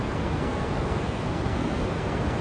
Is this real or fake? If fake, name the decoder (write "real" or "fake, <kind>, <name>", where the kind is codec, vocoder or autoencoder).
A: fake, codec, SNAC